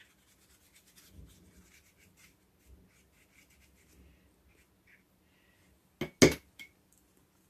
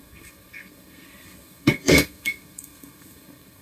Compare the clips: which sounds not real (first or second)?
second